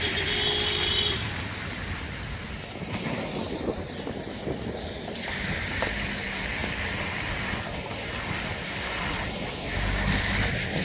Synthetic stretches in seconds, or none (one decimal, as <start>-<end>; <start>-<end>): none